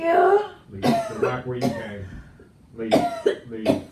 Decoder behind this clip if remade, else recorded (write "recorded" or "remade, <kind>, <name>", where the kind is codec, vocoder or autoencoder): recorded